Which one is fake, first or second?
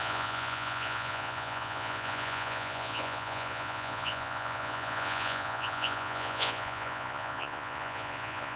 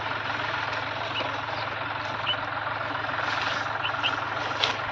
first